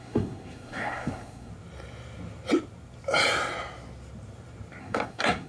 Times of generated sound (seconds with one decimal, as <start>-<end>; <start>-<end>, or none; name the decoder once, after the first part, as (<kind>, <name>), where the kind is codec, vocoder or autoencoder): 0.0-1.5 (codec, SNAC); 4.8-5.5